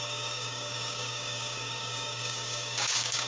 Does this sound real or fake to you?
fake